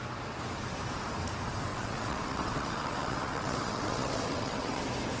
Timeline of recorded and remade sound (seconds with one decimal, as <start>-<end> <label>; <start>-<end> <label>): 0.0-1.7 recorded; 1.7-4.8 remade; 4.8-5.2 recorded